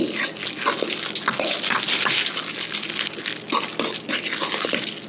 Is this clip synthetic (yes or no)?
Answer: no